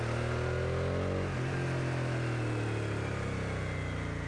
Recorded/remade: recorded